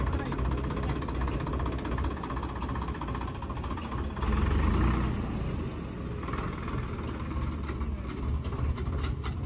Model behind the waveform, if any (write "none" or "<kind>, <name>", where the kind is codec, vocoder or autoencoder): none